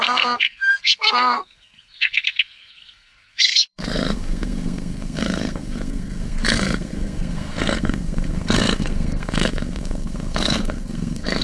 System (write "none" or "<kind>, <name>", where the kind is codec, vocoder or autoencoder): codec, SNAC